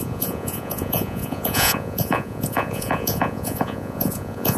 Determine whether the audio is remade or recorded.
remade